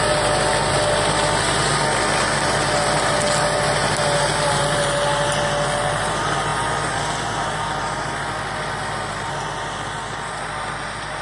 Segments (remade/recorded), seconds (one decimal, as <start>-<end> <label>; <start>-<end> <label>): 0.0-11.2 recorded